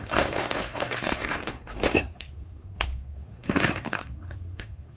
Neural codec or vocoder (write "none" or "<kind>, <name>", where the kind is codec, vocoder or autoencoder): codec, SNAC